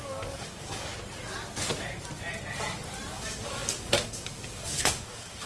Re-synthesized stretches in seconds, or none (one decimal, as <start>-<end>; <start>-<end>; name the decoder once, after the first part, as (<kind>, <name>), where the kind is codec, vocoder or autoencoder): 0.0-0.9 (codec, DAC); 3.1-5.5